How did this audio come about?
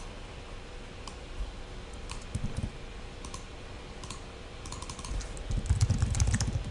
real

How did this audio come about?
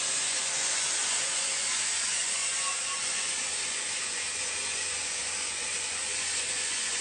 fake